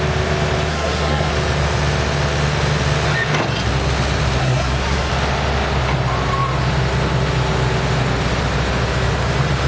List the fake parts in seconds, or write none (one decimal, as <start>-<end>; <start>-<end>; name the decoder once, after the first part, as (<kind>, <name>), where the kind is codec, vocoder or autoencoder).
0.7-1.3 (codec, SNAC); 4.4-5.1